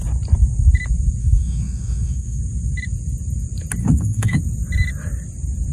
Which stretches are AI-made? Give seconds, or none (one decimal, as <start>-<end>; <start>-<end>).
1.2-2.4; 3.8-4.4